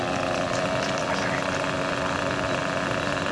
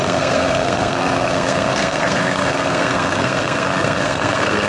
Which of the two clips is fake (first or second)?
second